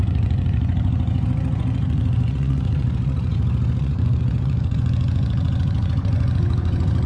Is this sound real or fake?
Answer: fake